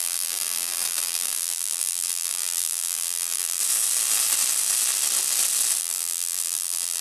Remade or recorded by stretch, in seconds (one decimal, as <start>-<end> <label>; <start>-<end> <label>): 0.0-3.6 remade; 3.6-5.8 recorded; 5.8-7.0 remade